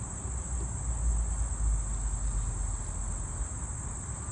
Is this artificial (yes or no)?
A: no